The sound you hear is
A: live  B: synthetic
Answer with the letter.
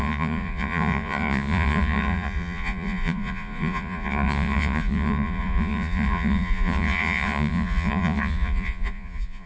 B